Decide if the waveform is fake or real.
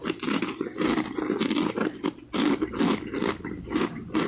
real